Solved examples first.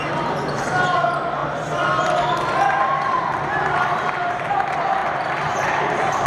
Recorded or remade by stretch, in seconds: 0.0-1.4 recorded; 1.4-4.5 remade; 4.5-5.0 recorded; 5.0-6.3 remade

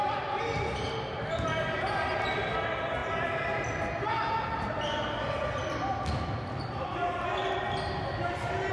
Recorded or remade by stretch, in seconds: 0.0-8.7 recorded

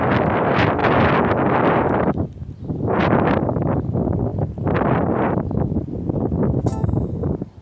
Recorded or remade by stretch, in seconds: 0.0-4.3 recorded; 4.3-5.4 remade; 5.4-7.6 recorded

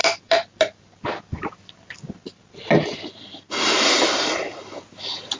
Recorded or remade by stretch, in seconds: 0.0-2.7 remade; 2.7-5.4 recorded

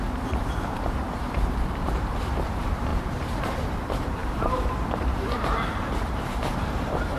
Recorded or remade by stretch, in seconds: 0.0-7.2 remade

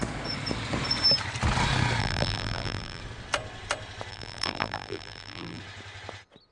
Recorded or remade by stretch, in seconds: 0.0-2.0 recorded; 2.0-3.0 remade; 3.0-4.1 recorded; 4.1-5.6 remade; 5.6-6.5 recorded

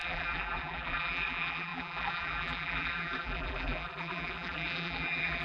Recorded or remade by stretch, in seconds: 0.0-5.4 remade